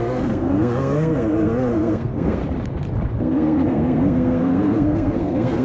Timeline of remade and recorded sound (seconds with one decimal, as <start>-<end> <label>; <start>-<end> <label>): 0.0-2.4 remade; 2.4-3.2 recorded; 3.2-5.6 remade